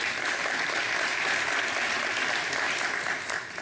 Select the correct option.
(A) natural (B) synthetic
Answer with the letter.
A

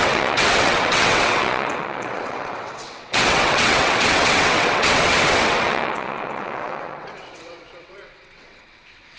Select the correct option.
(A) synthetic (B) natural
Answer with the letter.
A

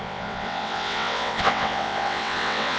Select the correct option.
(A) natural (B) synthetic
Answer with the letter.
B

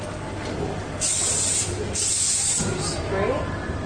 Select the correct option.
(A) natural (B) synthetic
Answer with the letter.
A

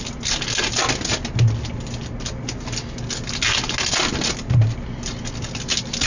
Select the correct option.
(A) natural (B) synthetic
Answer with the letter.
A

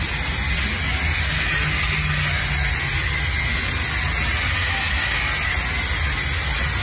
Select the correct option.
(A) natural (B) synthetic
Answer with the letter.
A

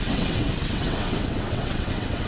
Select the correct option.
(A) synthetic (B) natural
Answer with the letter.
A